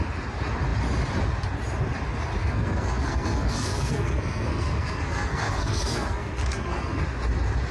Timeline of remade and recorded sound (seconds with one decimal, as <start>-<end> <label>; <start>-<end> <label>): 0.0-2.4 recorded; 2.4-7.0 remade; 7.0-7.7 recorded